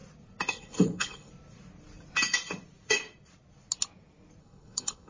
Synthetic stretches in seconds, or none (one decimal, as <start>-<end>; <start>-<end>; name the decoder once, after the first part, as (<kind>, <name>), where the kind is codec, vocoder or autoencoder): 0.5-1.3 (codec, HILCodec); 4.4-5.1